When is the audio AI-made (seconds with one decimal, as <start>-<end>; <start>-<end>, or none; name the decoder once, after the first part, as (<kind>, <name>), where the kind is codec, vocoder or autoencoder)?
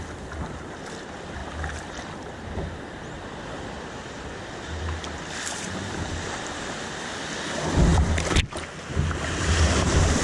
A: 1.4-6.3 (vocoder, BigVGAN v2); 7.9-8.4